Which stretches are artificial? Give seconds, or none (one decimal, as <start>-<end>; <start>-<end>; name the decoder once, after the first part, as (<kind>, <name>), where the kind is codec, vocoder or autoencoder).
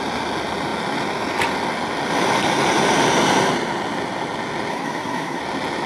4.7-5.4 (codec, SNAC)